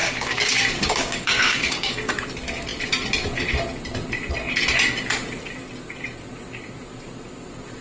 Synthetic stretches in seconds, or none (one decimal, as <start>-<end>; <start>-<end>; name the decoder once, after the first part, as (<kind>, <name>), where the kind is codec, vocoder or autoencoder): 0.0-2.1 (codec, DAC)